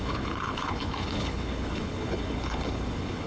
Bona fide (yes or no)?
no